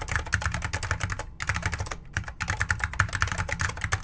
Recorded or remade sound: recorded